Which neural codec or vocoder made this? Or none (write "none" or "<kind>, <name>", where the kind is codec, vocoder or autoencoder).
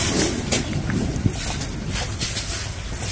none